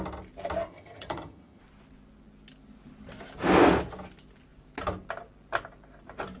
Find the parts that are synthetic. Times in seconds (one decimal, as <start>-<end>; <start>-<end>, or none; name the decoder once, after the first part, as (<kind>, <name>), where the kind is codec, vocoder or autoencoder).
0.7-1.6 (vocoder, HiFi-GAN)